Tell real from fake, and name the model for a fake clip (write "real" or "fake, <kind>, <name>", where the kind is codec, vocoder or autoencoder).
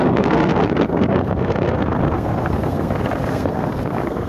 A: fake, codec, SNAC